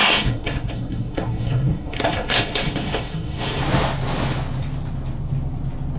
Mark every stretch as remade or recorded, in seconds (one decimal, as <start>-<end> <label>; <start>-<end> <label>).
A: 0.0-3.6 remade; 3.6-6.0 recorded